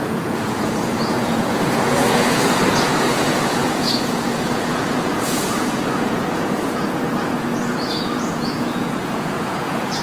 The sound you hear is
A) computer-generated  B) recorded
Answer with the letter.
A